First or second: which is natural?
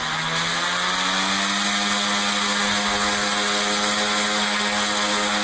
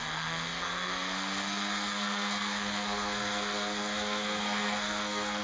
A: first